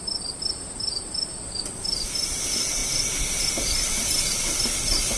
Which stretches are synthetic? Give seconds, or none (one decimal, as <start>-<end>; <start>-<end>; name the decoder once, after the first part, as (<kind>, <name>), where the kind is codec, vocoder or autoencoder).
none

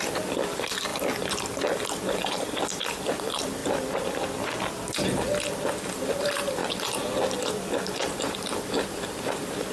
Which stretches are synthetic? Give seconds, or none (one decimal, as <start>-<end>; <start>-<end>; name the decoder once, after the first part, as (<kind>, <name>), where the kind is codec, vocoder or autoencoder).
0.0-0.9 (vocoder, BigVGAN v2); 1.7-3.6; 5.9-6.6; 8.1-9.7

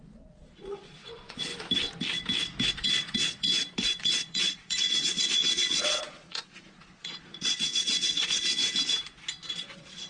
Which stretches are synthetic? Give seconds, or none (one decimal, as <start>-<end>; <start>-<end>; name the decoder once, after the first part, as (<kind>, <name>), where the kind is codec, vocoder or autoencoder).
0.0-1.5 (vocoder, Vocos); 2.7-3.5; 4.0-8.6; 9.5-10.1

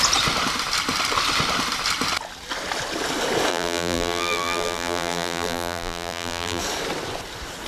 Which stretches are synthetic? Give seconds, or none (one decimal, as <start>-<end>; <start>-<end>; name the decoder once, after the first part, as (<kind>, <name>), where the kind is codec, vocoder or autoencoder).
3.5-6.6 (vocoder, BigVGAN v2)

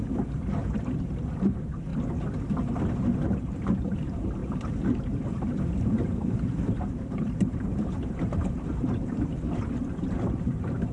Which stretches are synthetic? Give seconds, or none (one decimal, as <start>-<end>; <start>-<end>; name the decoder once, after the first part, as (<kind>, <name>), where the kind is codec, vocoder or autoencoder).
0.0-1.9 (vocoder, BigVGAN v2); 2.9-9.3; 9.8-10.9

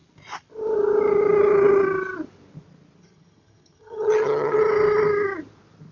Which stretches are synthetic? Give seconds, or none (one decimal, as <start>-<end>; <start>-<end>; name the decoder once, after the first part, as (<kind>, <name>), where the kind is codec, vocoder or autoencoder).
3.0-4.6 (vocoder, HiFi-GAN)

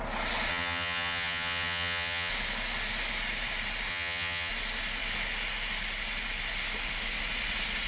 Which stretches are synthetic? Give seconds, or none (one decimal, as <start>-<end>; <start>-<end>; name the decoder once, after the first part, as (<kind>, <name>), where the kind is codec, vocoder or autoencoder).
0.5-2.3 (vocoder, HiFi-GAN); 3.9-4.5

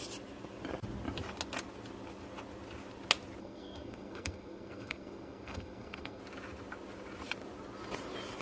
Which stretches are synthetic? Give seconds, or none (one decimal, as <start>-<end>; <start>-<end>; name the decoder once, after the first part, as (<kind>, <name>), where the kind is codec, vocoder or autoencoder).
3.4-6.2 (codec, SNAC)